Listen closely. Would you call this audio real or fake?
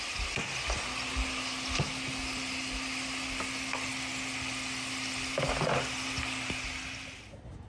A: real